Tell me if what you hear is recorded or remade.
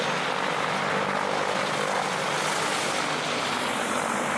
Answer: recorded